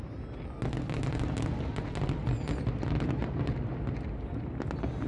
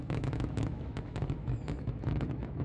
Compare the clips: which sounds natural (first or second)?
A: first